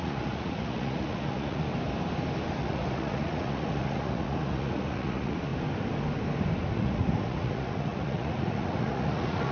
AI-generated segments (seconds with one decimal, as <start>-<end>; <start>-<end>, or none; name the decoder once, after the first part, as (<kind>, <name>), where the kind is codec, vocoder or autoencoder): 0.0-1.7 (vocoder, Vocos); 2.6-5.5; 6.7-9.5